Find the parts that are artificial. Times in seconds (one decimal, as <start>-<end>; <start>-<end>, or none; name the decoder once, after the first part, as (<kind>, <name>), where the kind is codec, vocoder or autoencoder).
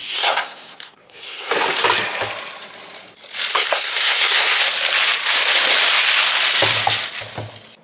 0.0-1.5 (codec, SNAC); 3.5-4.6